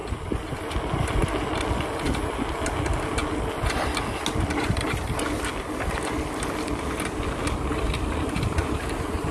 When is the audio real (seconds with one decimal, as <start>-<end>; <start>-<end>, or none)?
0.0-9.3